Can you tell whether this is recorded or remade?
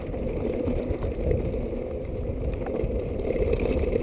recorded